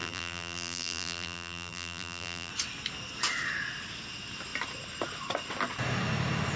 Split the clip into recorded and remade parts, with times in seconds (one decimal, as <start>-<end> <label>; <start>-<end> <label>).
0.0-2.5 remade; 2.5-6.6 recorded